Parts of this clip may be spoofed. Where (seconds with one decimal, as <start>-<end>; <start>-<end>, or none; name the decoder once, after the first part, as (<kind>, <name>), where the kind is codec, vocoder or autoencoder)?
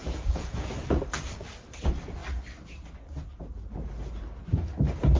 0.0-0.7 (vocoder, Vocos)